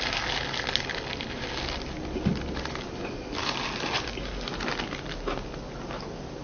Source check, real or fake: real